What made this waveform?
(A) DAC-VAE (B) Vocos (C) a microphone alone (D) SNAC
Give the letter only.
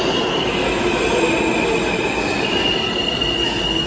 C